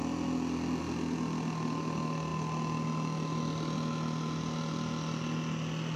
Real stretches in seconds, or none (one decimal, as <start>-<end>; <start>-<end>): 0.0-6.0